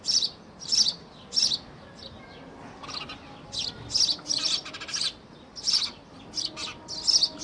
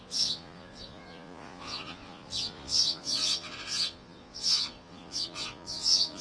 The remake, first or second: second